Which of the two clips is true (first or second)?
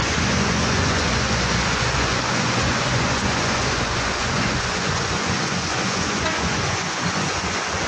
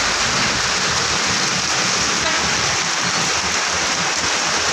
second